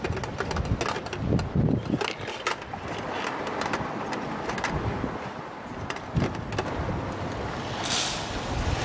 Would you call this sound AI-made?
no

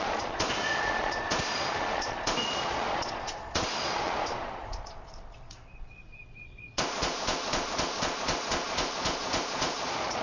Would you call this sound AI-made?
yes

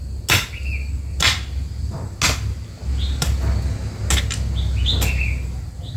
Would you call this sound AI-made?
no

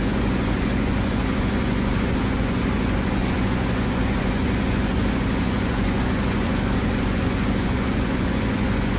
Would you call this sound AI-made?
yes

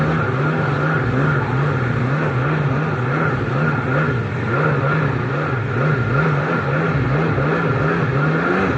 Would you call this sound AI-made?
no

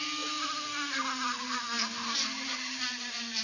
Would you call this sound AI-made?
no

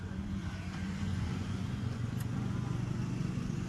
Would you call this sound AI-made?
yes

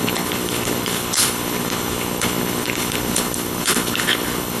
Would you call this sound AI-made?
yes